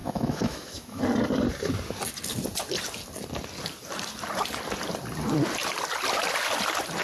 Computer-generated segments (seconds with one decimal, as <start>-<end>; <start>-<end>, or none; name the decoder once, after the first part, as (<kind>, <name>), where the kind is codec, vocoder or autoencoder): 0.0-1.0 (autoencoder, DAC-VAE)